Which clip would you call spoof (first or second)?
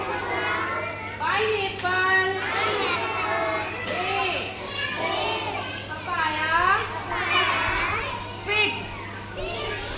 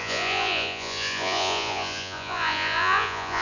second